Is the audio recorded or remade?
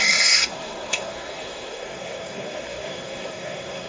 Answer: remade